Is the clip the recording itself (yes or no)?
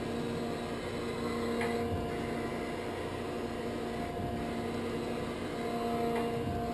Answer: yes